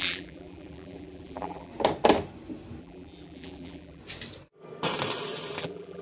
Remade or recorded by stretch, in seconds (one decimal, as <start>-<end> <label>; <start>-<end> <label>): 0.0-1.7 remade; 1.7-2.8 recorded; 2.8-4.0 remade; 4.0-5.6 recorded; 5.6-6.0 remade